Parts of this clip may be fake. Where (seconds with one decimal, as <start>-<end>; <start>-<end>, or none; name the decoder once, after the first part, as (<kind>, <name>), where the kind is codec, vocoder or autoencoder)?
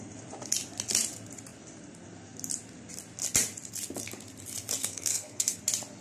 4.8-5.6 (codec, SNAC)